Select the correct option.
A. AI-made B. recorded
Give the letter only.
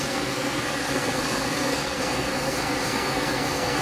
A